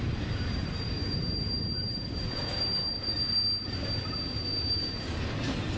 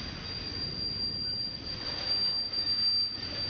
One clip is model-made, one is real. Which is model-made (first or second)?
first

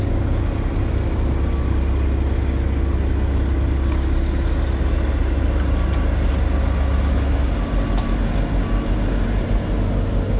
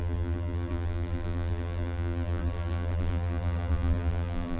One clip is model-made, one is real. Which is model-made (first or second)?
second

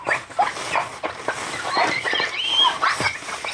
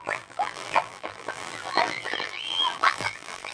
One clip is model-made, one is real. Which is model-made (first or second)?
second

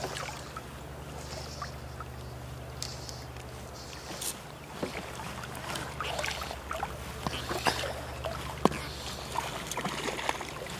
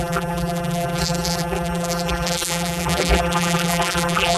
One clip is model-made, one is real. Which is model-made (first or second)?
second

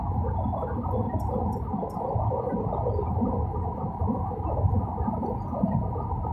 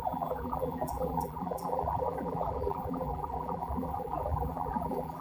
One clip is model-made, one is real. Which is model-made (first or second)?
second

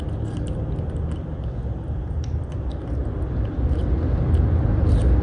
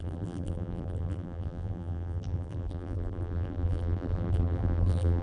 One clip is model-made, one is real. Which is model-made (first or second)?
second